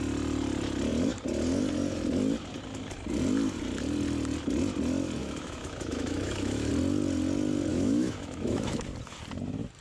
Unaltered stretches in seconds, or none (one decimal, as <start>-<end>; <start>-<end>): 0.0-5.2; 6.7-7.7; 8.8-9.8